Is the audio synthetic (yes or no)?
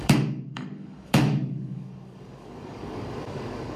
yes